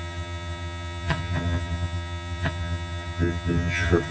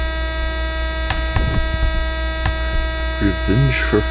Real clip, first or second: second